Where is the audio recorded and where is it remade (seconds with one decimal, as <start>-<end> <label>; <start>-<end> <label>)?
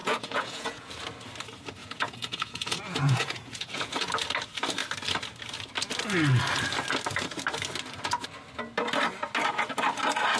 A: 0.0-0.9 remade; 0.9-1.8 recorded; 1.8-4.1 remade; 4.1-10.4 recorded